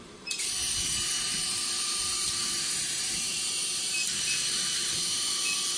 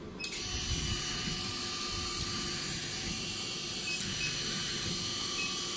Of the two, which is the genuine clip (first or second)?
second